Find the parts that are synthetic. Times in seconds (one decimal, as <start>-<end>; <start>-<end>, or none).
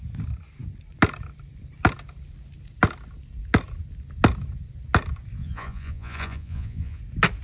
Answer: 5.4-7.0